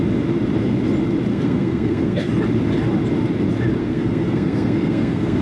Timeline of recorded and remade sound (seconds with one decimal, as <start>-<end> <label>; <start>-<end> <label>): 0.0-1.3 recorded; 1.3-2.3 remade; 2.3-3.8 recorded; 3.8-5.4 remade